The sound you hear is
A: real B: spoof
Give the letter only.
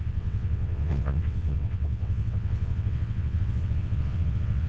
B